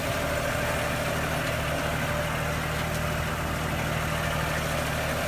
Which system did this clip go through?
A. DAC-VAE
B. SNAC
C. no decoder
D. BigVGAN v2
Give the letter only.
C